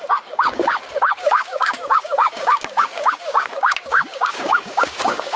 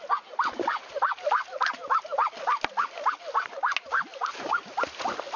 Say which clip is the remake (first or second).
first